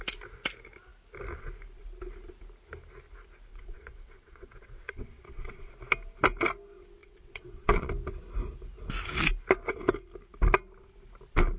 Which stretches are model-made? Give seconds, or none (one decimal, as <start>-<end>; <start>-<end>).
3.5-5.7; 7.0-7.9